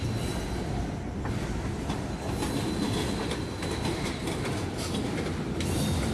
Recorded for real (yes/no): yes